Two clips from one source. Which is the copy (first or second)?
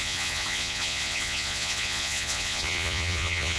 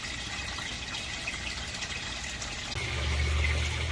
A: first